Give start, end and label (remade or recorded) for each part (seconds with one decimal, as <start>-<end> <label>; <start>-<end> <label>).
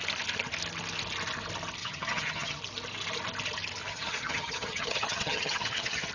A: 0.0-1.8 recorded; 1.8-2.6 remade; 2.6-3.9 recorded; 3.9-6.1 remade